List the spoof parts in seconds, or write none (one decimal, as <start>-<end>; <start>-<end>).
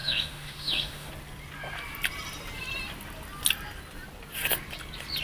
0.0-1.1